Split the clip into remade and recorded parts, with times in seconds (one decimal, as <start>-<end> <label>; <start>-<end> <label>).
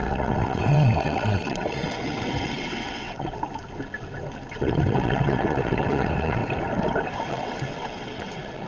0.0-3.4 remade; 3.4-4.5 recorded; 4.5-6.4 remade; 6.4-7.2 recorded; 7.2-8.7 remade